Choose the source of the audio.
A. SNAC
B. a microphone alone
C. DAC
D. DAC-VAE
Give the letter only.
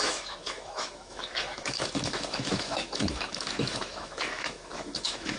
D